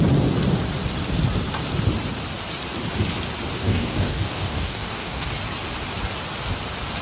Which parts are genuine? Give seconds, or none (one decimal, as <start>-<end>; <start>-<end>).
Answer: 0.0-3.6; 5.3-7.0